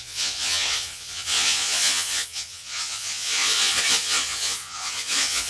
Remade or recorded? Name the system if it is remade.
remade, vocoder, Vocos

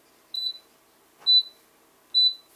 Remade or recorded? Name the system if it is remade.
recorded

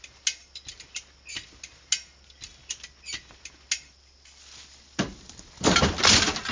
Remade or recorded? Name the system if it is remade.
recorded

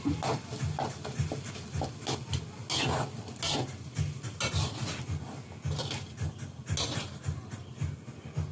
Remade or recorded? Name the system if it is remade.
recorded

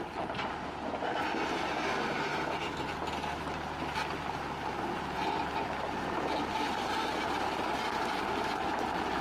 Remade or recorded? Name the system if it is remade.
recorded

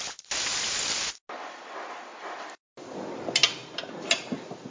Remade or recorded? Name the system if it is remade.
recorded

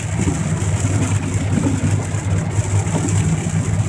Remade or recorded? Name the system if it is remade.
recorded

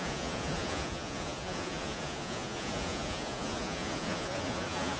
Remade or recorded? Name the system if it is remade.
remade, vocoder, Vocos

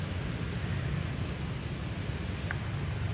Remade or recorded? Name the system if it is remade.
recorded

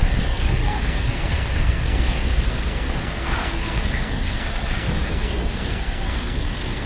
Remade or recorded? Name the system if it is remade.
remade, codec, SNAC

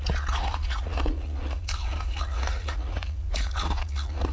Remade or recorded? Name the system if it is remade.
remade, vocoder, Vocos